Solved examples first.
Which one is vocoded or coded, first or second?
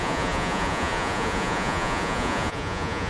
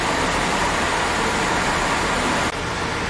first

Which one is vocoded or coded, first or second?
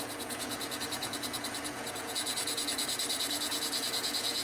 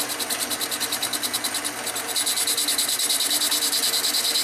first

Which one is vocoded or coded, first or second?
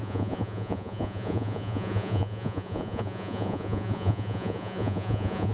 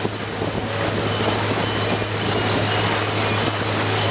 first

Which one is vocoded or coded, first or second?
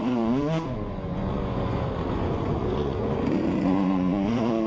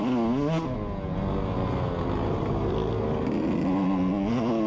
first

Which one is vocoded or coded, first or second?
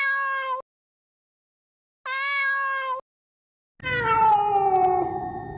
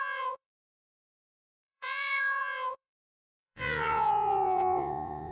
second